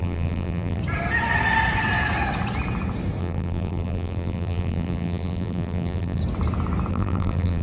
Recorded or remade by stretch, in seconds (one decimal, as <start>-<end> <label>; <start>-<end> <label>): 0.0-0.8 remade; 0.8-3.2 recorded; 3.2-6.2 remade; 6.2-6.9 recorded; 6.9-7.6 remade